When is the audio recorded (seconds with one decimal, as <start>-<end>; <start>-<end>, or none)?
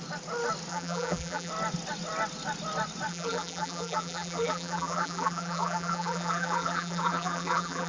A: 0.0-0.7; 1.5-3.1